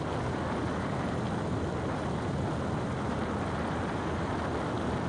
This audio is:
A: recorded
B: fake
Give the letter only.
A